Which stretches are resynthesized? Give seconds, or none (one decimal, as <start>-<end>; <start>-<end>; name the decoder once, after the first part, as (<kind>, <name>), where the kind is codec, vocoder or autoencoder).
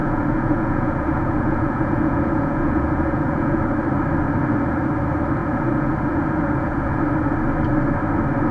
0.0-3.6 (vocoder, Vocos); 5.4-7.0